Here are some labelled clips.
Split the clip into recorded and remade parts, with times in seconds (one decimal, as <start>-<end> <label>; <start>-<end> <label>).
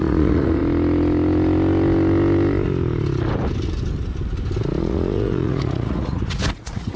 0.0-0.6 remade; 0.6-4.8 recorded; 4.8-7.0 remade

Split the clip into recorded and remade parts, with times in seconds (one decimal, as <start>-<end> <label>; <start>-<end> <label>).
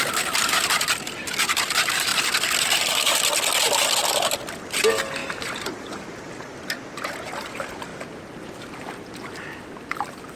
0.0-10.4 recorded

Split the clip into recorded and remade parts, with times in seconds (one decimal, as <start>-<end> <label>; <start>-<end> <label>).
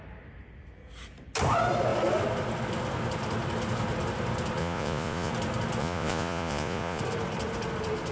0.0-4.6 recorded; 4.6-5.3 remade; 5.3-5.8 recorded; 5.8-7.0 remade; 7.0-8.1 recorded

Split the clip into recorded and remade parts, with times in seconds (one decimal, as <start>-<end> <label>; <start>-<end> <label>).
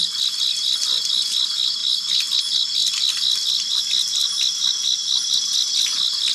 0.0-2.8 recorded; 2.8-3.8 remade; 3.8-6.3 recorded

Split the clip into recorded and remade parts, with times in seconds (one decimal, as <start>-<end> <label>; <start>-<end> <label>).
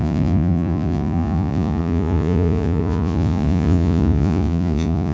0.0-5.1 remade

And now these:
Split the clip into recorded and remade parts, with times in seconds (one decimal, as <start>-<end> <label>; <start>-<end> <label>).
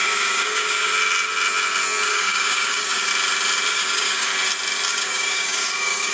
0.0-0.9 remade; 0.9-2.1 recorded; 2.1-3.1 remade; 3.1-3.7 recorded; 3.7-4.3 remade; 4.3-4.9 recorded; 4.9-6.1 remade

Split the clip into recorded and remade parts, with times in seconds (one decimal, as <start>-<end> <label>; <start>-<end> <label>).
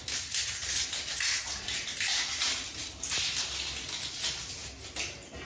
0.0-5.5 recorded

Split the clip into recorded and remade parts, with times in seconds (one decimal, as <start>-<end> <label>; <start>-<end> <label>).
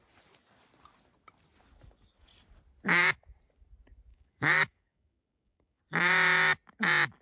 0.0-4.1 recorded; 4.1-5.8 remade; 5.8-7.2 recorded